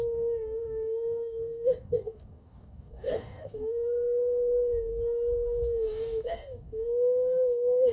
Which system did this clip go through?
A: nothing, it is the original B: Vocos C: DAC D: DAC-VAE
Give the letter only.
C